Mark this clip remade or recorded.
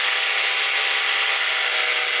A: recorded